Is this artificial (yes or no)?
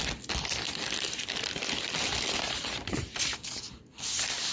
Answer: no